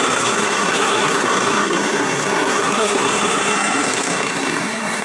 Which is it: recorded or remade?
remade